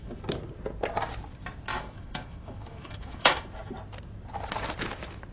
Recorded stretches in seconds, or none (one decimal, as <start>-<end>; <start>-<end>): 0.0-1.7; 3.5-5.3